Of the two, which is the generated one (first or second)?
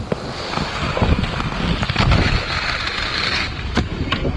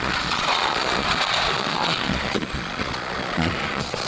second